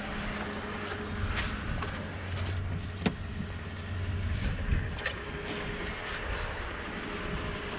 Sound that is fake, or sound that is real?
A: real